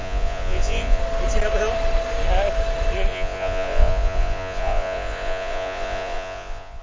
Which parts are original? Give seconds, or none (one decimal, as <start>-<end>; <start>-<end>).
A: 1.0-3.1

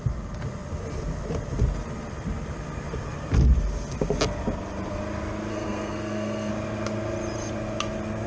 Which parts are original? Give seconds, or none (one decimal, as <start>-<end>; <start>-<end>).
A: 0.0-5.5; 6.5-8.3

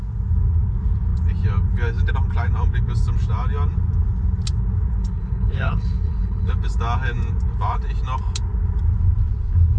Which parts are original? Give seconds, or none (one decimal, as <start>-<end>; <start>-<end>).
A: 0.0-5.0; 6.5-9.8

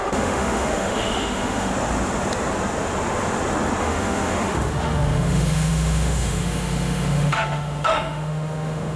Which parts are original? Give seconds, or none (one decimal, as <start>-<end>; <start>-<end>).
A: 1.7-3.8

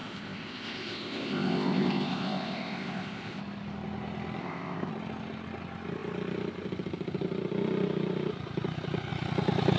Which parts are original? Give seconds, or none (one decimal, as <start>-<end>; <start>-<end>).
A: 3.4-4.4; 4.9-9.8

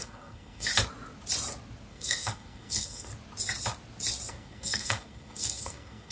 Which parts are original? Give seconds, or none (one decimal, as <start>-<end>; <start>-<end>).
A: 0.7-1.9; 3.1-4.3

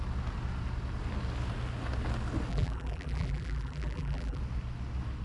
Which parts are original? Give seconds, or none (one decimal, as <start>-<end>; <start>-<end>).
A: 0.0-2.5; 4.4-5.2